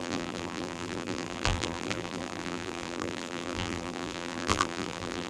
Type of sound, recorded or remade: remade